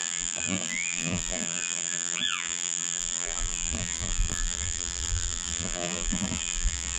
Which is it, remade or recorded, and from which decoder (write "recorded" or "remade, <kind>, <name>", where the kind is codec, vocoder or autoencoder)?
remade, vocoder, BigVGAN v2